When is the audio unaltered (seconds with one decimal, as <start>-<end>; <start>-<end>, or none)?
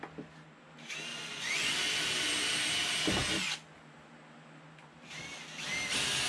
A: 0.0-1.1; 1.7-6.3